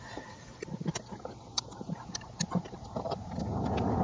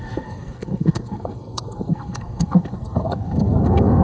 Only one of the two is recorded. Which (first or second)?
first